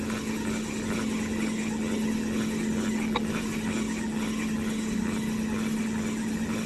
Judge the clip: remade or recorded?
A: recorded